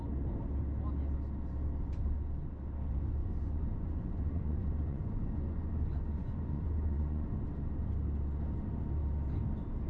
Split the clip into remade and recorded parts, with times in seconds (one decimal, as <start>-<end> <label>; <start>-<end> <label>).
0.0-3.2 recorded; 3.2-7.4 remade; 7.4-9.9 recorded